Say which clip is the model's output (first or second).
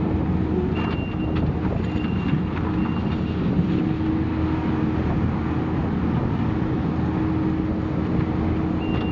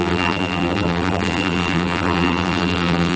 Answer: second